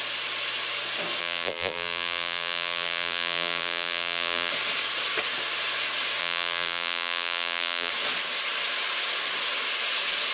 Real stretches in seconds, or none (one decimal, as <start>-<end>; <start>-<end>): 0.0-1.2; 4.5-6.2; 7.9-10.3